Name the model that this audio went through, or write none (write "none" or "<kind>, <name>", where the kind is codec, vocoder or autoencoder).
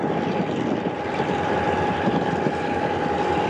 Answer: vocoder, BigVGAN v2